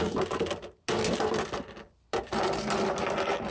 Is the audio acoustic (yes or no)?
yes